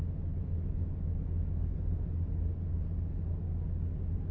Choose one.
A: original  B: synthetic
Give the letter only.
A